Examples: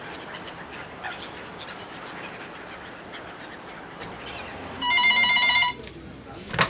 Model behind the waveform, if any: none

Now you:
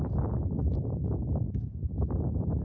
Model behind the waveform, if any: none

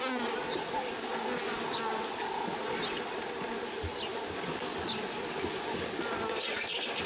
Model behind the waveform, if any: none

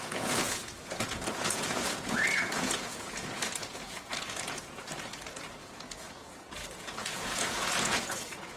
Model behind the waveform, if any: vocoder, Vocos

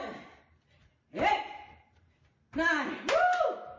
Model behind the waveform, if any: none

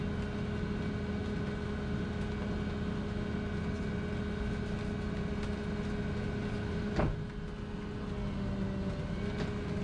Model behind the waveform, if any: none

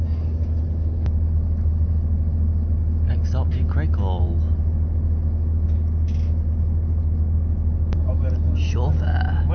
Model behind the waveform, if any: none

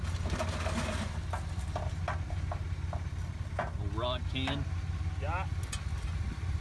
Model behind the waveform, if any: none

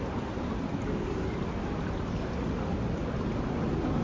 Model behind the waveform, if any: none